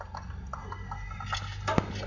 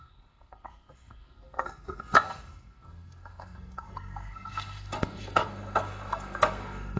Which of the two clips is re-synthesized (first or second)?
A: second